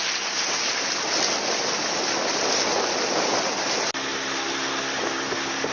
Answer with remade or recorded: recorded